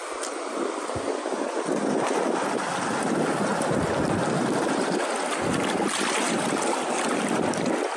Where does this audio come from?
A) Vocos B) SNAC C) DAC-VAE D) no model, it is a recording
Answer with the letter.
D